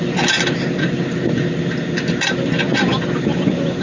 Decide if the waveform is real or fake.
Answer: real